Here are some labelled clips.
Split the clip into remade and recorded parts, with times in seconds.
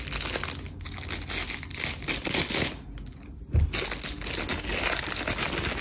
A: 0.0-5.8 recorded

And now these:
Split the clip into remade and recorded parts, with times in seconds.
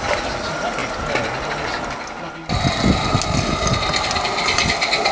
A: 0.0-5.1 recorded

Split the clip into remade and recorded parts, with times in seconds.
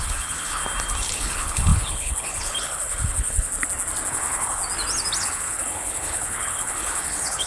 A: 0.0-0.6 remade; 0.6-1.1 recorded; 1.1-3.5 remade; 3.5-4.1 recorded; 4.1-4.6 remade; 4.6-5.2 recorded; 5.2-7.5 remade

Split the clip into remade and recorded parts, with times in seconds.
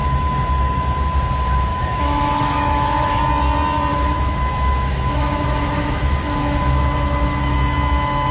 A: 0.0-1.0 remade; 1.0-1.7 recorded; 1.7-3.2 remade; 3.2-3.9 recorded; 3.9-7.5 remade; 7.5-8.3 recorded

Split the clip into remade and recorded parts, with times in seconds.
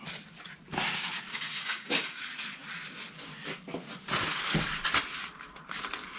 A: 0.0-1.3 recorded; 1.3-2.2 remade; 2.2-6.2 recorded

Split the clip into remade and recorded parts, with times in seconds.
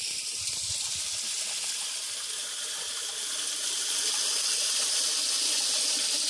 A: 0.0-0.6 remade; 0.6-6.3 recorded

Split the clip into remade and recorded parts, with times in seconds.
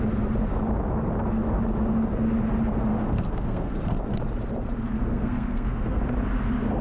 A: 0.0-2.9 recorded; 2.9-3.7 remade; 3.7-5.0 recorded; 5.0-6.0 remade; 6.0-6.8 recorded